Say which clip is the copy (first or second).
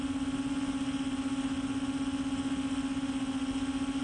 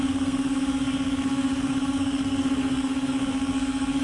second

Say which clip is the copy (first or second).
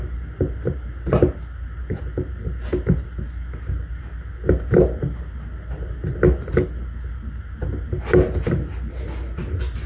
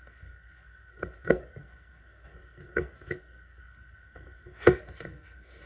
second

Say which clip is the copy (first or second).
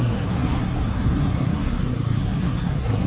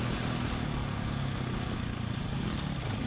first